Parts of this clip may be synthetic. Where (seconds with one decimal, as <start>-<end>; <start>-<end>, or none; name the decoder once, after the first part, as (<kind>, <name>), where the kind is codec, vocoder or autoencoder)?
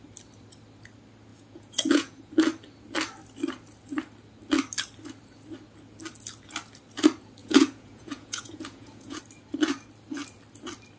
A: 1.3-2.3 (vocoder, Vocos); 7.4-9.2